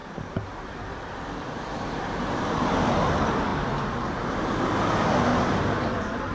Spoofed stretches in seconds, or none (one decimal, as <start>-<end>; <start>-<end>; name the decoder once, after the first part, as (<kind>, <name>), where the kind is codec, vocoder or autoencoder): 0.0-2.7 (vocoder, BigVGAN v2); 5.3-6.3